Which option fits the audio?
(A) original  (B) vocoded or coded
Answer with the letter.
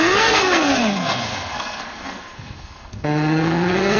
B